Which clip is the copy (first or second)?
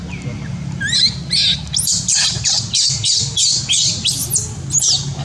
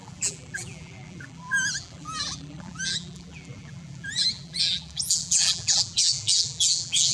second